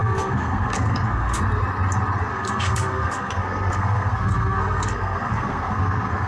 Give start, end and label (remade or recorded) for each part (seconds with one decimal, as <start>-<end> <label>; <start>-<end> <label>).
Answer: 0.0-1.4 remade; 1.4-2.3 recorded; 2.3-6.3 remade